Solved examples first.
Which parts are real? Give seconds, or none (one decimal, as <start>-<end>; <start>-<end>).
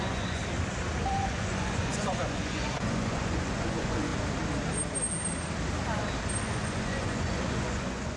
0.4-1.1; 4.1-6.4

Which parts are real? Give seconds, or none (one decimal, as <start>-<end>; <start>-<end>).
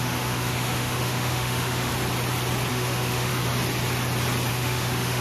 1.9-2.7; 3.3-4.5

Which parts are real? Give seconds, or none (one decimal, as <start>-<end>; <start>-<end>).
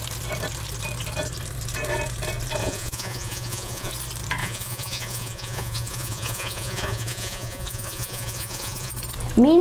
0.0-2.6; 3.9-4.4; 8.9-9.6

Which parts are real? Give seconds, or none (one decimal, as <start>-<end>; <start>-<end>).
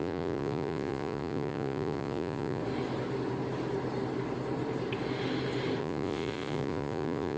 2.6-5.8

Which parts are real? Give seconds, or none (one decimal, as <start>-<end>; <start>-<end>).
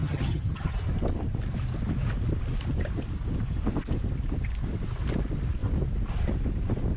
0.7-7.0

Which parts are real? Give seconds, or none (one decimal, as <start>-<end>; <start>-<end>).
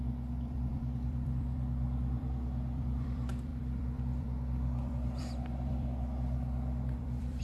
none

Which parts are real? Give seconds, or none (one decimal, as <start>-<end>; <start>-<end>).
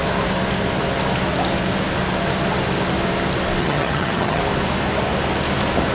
0.0-3.6; 4.4-5.9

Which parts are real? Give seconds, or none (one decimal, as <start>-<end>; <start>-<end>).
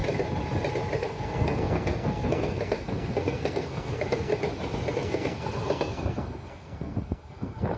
0.0-1.0; 4.3-4.9